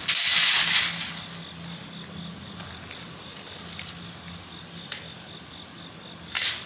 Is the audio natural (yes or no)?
yes